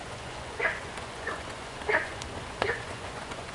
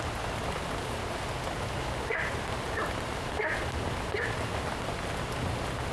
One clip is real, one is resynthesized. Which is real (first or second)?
second